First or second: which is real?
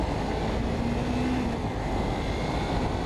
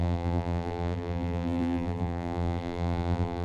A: first